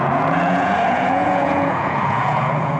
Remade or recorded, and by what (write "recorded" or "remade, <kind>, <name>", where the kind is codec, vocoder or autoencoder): remade, vocoder, Vocos